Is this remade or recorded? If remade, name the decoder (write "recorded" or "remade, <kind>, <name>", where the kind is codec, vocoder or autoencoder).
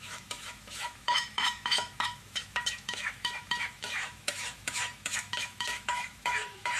remade, autoencoder, DAC-VAE